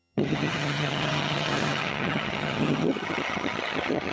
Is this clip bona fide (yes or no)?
no